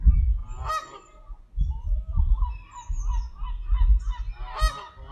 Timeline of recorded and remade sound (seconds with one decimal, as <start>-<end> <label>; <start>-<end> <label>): 0.0-5.1 recorded